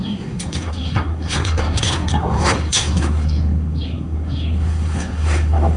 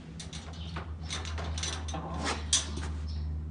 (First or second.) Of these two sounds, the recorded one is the second